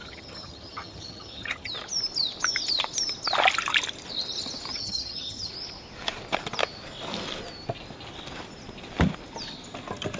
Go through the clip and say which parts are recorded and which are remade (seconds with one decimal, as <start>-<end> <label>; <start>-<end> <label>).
0.0-1.7 remade; 1.7-4.7 recorded; 4.7-5.5 remade; 5.5-10.2 recorded